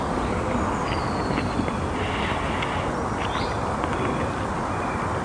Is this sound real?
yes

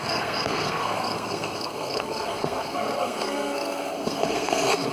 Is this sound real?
no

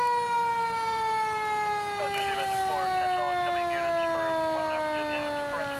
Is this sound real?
yes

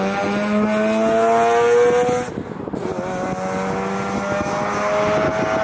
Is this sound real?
yes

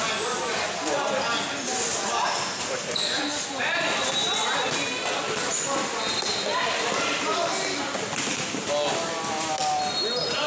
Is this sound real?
yes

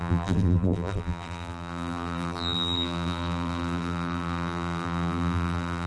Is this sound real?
no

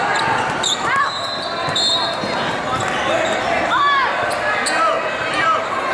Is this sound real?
yes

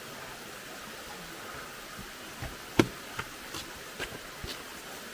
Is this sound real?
yes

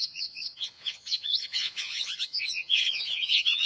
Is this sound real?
no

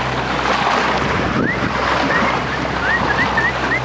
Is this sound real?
yes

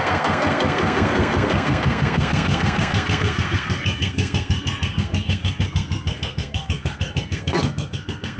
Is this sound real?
no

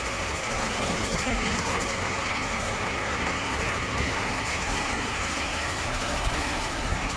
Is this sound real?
no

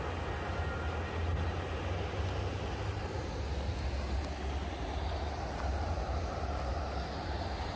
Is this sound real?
yes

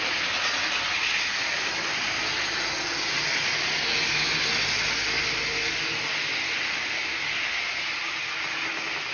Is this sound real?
yes